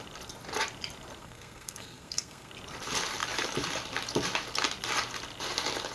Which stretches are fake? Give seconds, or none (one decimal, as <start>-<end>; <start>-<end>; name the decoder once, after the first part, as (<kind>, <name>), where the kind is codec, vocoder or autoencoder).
1.2-2.5 (codec, SNAC)